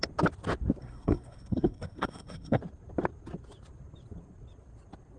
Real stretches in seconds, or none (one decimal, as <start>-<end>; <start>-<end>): 0.0-0.8; 2.6-5.2